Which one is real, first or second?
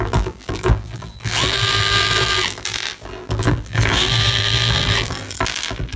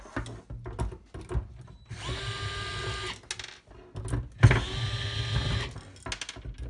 second